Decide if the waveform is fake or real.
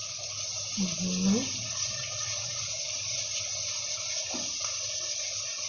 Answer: real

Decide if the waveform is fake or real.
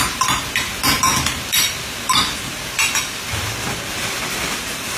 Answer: real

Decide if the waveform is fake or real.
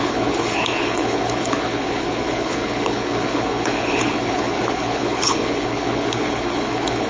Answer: fake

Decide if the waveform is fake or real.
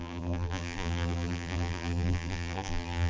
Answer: fake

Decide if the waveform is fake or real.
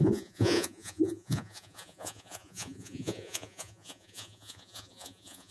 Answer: fake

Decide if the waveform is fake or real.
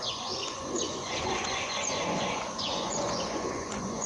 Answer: fake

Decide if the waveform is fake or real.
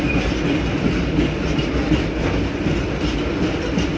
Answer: real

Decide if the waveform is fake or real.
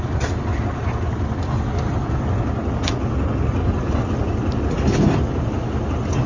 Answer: real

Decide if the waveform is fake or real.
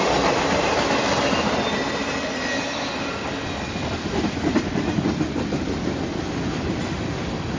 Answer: real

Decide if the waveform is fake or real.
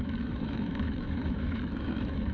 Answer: fake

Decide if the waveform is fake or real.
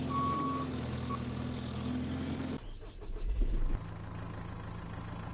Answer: real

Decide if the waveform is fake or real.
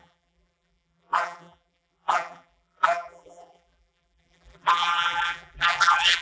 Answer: fake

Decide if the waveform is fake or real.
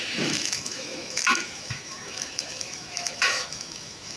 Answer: fake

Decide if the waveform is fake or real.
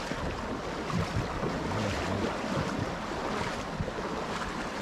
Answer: real